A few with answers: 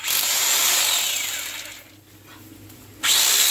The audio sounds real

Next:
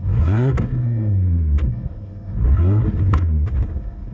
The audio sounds fake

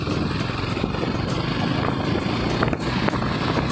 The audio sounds real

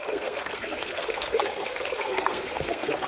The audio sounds fake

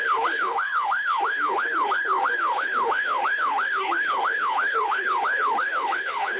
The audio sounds fake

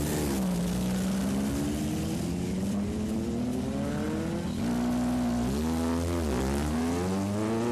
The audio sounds real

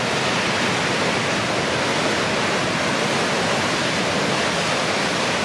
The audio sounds real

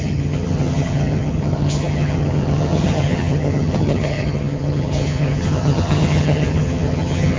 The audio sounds fake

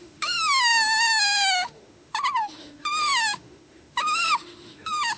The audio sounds fake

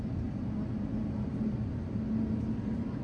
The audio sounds real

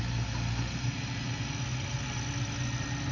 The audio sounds real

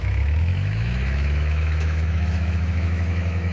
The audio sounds fake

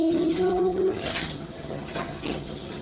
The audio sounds fake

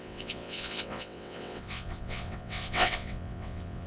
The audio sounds fake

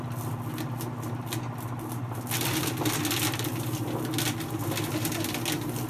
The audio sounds real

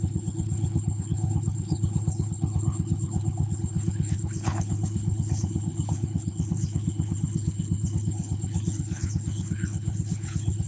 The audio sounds fake